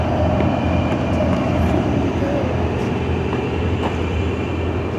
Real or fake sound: real